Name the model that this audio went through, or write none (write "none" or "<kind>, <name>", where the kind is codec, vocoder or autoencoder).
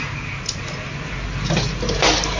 none